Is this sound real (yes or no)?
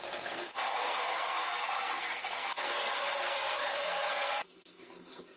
no